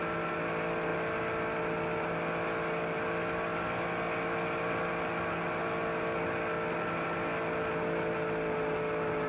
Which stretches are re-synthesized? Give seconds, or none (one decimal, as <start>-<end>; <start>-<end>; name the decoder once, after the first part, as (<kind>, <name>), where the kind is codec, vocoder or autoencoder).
none